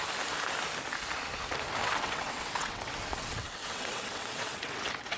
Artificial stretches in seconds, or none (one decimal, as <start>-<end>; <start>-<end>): 1.8-5.2